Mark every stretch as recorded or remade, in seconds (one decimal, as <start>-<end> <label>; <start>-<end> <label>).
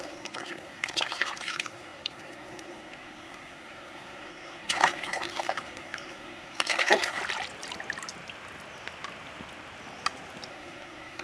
0.0-7.2 remade; 7.2-10.5 recorded; 10.5-11.2 remade